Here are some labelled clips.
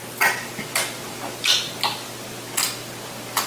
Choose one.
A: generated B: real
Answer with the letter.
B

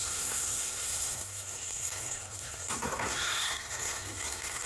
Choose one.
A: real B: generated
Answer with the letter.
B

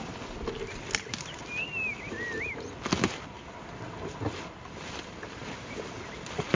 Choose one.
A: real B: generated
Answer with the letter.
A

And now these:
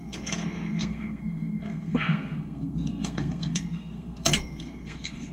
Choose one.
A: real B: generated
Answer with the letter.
B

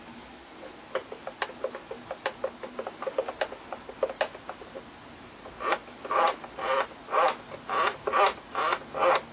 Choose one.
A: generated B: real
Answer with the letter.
B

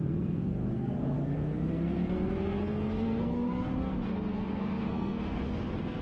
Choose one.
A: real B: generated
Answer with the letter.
B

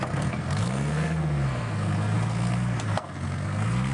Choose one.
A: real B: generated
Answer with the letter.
B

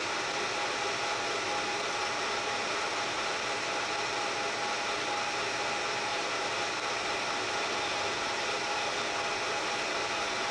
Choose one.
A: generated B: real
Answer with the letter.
B